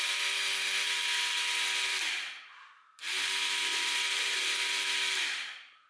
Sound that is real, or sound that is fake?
real